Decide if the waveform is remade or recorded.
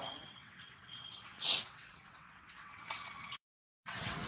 remade